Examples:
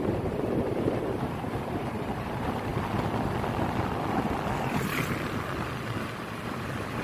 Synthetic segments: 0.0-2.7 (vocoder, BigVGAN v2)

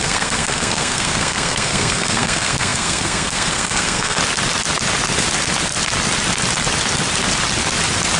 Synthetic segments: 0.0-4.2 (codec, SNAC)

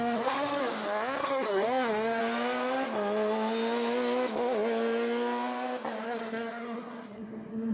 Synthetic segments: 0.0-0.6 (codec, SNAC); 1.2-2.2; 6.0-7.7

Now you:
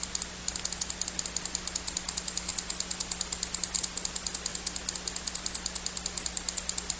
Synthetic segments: none

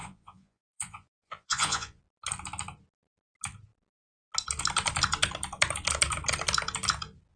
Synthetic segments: 0.0-2.0 (vocoder, Vocos)

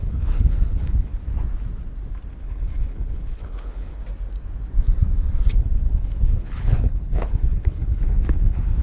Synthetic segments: 0.0-1.1 (codec, HILCodec); 2.4-4.0; 5.6-8.8